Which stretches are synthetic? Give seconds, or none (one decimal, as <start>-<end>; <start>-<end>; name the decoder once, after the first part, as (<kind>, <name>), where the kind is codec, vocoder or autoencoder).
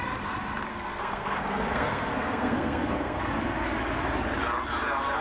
0.7-3.2 (codec, SNAC)